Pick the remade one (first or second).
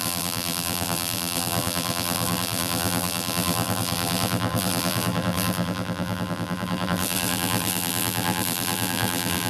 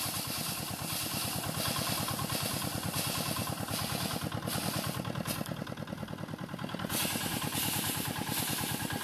first